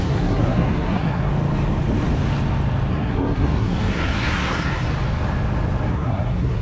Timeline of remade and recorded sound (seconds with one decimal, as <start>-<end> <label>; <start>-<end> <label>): 0.0-1.3 remade; 1.3-2.9 recorded; 2.9-4.9 remade; 4.9-5.9 recorded; 5.9-6.6 remade